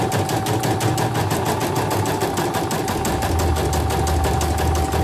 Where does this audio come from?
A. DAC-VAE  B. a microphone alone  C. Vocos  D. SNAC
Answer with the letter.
B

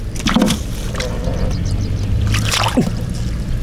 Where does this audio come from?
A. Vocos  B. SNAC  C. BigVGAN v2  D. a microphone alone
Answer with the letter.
D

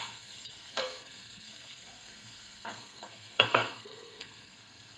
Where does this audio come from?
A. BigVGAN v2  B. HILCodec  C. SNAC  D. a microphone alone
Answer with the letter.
C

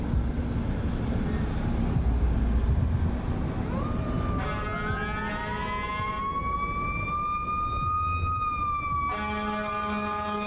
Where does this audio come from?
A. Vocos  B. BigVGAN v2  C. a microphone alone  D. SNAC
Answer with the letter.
C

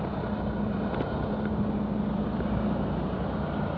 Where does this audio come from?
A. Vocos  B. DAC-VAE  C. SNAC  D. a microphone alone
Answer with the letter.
D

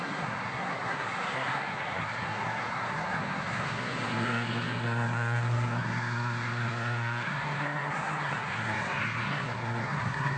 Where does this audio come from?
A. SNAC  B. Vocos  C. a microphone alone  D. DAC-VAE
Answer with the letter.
A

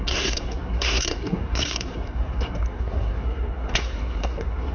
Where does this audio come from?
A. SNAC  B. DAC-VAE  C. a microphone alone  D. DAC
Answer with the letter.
A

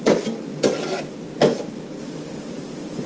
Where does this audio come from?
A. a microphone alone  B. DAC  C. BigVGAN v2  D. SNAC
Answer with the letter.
A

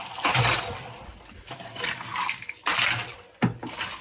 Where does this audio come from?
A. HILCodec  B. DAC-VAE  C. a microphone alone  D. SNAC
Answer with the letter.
C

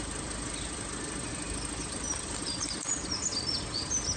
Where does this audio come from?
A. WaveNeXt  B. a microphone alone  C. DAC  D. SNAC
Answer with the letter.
B